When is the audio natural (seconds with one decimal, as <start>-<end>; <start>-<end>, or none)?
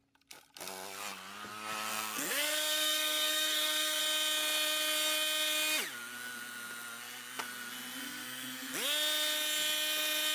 0.0-1.9; 4.0-8.0; 8.7-10.3